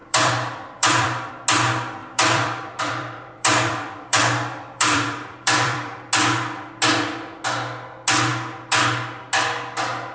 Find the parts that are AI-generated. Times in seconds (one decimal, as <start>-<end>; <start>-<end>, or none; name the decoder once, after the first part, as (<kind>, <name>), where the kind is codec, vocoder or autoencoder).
0.0-1.3 (vocoder, BigVGAN v2); 2.0-6.1